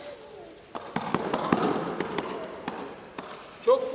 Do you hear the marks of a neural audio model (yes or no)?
no